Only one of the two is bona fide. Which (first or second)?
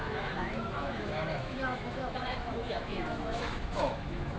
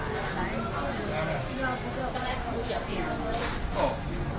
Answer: second